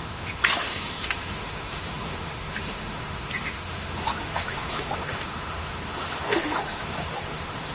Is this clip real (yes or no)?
no